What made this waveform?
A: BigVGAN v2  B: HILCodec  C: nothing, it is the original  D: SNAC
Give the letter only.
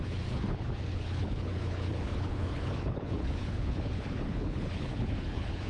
B